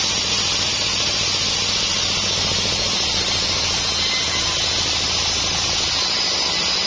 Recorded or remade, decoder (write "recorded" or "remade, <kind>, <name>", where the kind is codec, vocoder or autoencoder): recorded